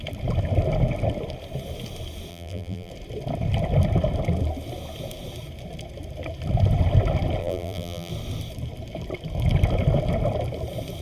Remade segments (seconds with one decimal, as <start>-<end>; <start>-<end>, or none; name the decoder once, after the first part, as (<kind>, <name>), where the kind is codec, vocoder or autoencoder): 2.3-2.9 (vocoder, BigVGAN v2); 7.4-8.1